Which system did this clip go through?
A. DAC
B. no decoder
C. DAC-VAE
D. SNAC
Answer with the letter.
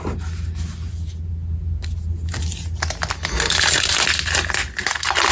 B